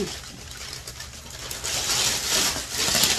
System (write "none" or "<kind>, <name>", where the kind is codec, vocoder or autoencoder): none